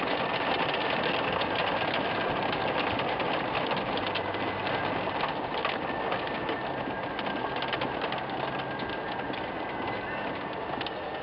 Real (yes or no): yes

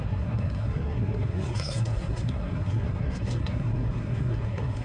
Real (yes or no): no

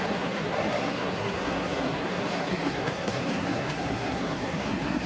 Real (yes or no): no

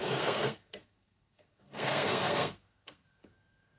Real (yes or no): no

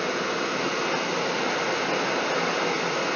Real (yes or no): yes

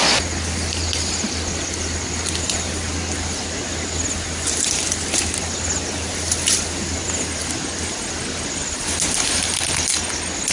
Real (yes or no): yes